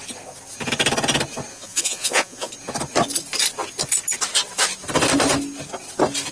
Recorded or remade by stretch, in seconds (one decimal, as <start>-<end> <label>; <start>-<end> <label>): 0.0-1.5 recorded; 1.5-2.5 remade; 2.5-6.3 recorded